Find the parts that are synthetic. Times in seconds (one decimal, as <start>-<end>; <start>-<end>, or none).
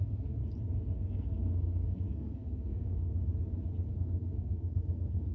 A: 0.0-0.4; 1.1-3.1; 3.9-5.3